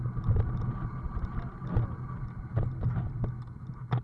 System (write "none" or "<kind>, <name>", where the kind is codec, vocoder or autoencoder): none